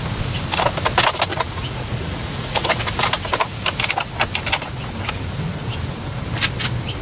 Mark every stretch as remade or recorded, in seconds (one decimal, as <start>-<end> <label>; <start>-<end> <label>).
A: 0.0-1.3 recorded; 1.3-2.7 remade; 2.7-7.0 recorded